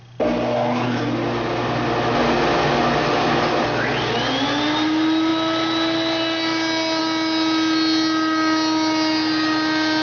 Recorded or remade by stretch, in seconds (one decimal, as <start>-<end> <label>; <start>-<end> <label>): 0.0-10.0 recorded